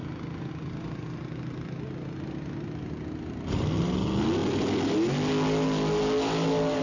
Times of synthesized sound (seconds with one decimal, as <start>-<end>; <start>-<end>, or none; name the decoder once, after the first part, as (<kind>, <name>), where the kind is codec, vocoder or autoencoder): none